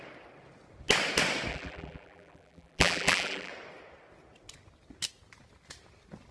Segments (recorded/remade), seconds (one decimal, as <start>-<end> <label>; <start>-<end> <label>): 0.0-1.5 recorded; 1.5-3.5 remade; 3.5-6.3 recorded